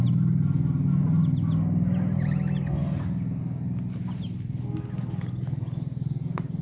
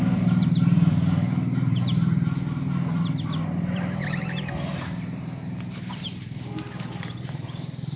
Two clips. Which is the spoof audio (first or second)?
second